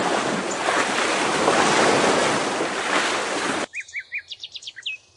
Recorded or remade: recorded